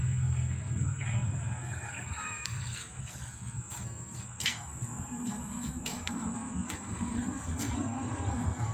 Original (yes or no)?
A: no